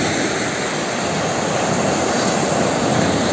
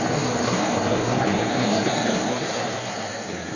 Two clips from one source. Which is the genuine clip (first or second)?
first